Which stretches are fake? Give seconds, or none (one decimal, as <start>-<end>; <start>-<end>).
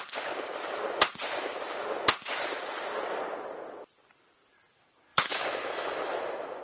5.1-6.6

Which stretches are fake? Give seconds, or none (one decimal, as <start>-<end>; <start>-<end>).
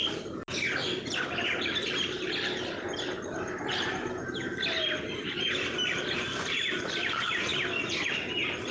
none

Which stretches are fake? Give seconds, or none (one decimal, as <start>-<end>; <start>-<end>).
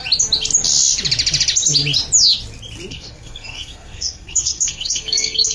2.9-5.5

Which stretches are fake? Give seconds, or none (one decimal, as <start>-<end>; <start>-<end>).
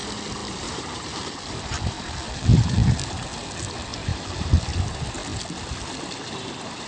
0.4-4.5